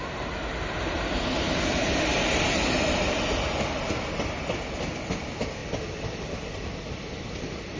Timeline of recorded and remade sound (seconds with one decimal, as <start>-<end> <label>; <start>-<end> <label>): 0.0-7.8 recorded